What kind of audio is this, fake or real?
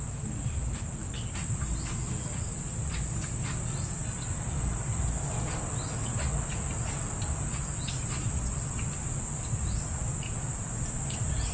real